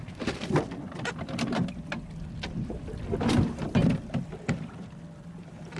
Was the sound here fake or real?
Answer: fake